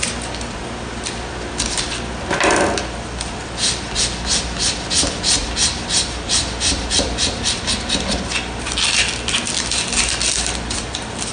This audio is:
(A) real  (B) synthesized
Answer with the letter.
A